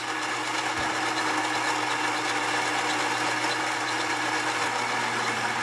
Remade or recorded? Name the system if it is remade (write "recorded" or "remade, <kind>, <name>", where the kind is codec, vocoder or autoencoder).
recorded